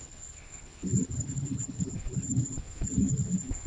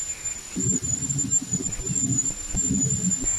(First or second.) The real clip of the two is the second